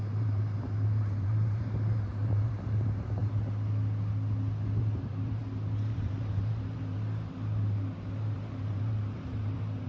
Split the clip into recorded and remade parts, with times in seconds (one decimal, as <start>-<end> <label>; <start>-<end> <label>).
0.0-3.2 remade; 3.2-4.8 recorded; 4.8-9.9 remade